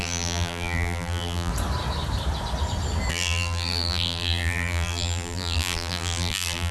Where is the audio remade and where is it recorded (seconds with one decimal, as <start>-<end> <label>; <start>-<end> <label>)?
0.0-1.5 remade; 1.5-3.1 recorded; 3.1-6.7 remade